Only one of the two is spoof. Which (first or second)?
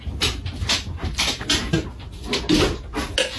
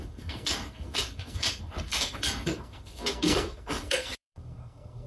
second